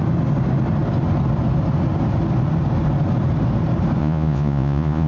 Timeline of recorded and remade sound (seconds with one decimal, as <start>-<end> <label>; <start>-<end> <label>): 0.0-4.0 recorded; 4.0-5.1 remade